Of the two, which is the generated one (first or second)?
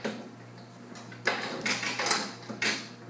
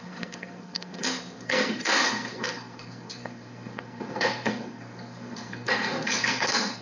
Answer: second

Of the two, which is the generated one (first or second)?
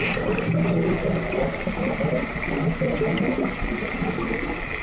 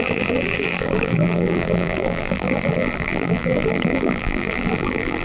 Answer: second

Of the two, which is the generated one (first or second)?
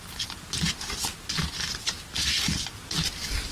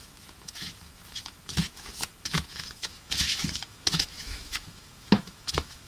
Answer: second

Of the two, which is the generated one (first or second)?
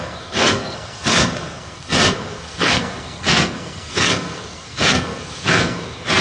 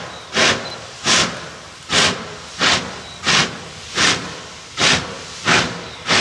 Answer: first